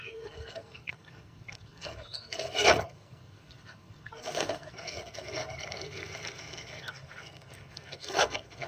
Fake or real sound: fake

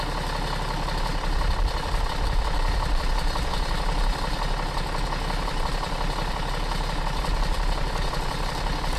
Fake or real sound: real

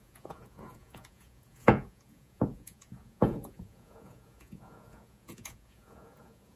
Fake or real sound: fake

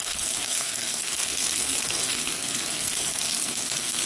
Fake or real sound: fake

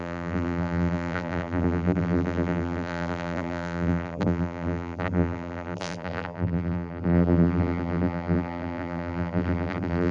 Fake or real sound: fake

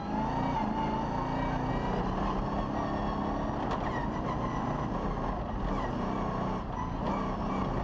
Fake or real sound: real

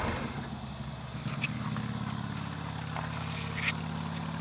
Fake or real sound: real